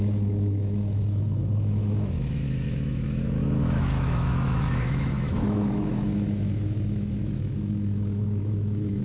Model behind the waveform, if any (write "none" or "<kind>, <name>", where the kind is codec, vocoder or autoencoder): autoencoder, DAC-VAE